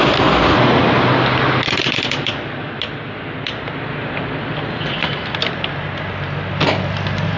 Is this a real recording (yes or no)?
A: yes